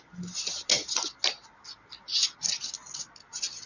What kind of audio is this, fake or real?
real